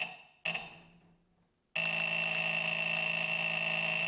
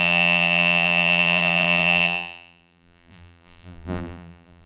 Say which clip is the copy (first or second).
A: second